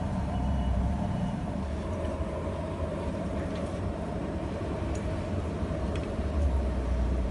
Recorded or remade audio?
remade